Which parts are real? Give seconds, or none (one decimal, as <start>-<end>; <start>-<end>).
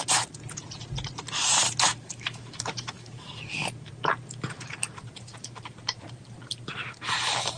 0.0-1.9; 3.3-7.6